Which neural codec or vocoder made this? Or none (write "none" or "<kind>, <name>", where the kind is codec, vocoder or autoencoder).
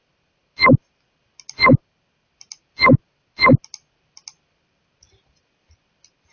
none